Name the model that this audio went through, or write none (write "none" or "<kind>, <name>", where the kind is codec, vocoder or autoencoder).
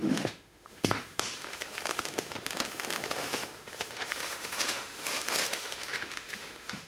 autoencoder, DAC-VAE